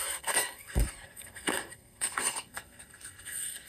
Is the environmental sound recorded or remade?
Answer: remade